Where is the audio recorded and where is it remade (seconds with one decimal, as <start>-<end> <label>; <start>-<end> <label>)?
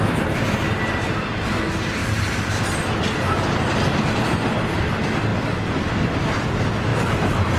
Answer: 0.0-2.0 recorded; 2.0-2.6 remade; 2.6-6.9 recorded; 6.9-7.6 remade